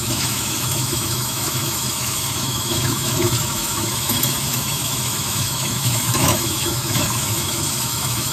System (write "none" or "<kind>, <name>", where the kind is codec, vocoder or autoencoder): autoencoder, DAC-VAE